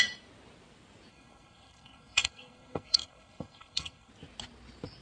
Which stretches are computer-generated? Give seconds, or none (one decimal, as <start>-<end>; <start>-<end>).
1.1-4.1